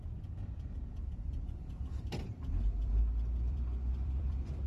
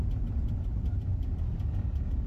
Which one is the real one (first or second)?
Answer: second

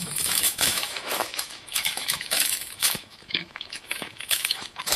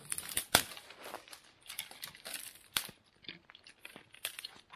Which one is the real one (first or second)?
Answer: second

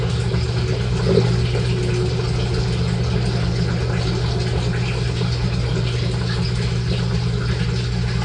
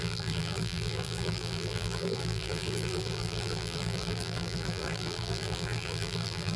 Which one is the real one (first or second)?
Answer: first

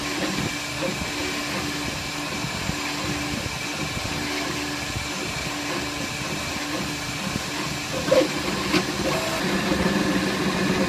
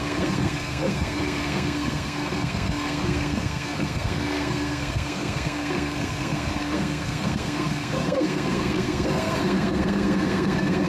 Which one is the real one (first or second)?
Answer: first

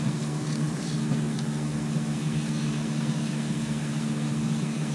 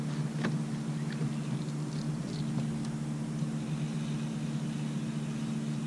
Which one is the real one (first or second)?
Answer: second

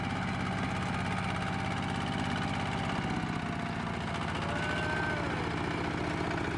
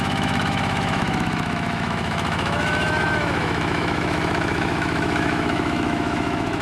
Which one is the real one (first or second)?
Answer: first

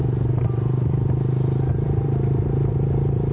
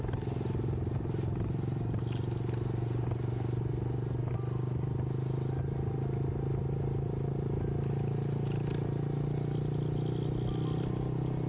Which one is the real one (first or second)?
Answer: second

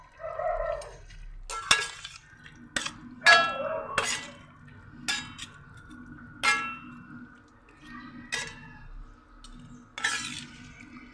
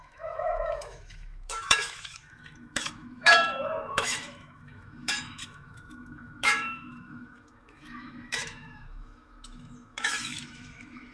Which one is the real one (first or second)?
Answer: first